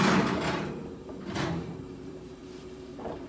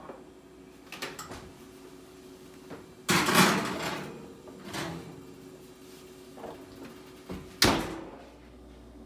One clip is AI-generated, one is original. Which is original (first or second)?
second